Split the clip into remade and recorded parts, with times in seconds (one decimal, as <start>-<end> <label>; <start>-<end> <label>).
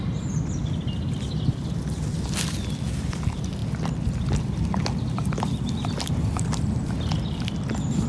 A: 0.0-8.1 recorded